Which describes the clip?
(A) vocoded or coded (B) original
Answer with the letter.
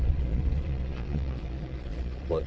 A